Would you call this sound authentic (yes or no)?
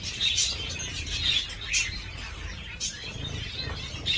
no